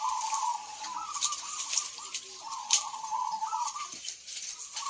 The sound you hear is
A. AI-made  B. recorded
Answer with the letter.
B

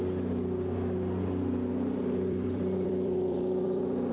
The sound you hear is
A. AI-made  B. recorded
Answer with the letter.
A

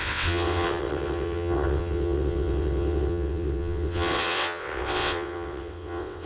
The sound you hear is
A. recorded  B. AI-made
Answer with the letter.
B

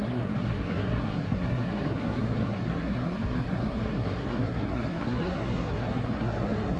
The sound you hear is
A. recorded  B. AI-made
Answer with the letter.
B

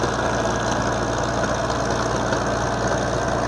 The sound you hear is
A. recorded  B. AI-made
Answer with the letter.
A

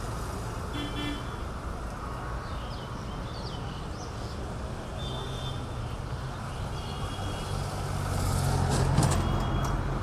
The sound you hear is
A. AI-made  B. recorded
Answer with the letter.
B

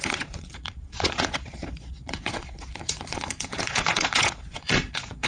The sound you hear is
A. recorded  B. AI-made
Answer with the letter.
B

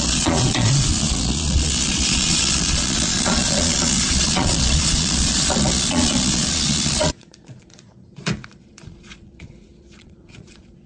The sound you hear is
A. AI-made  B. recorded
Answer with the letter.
A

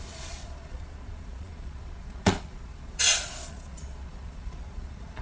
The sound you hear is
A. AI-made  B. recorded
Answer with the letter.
A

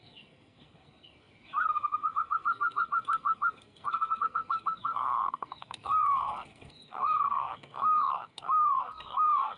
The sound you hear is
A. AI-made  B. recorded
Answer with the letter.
A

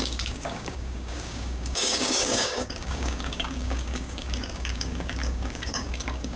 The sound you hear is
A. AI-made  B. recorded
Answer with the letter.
A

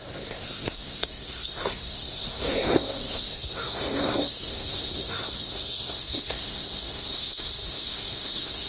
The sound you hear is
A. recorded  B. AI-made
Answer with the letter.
B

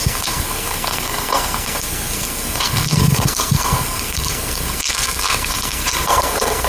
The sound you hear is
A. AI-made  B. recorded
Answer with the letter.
A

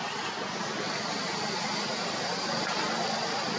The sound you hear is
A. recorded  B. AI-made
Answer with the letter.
A